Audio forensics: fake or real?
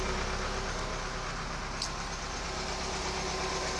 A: real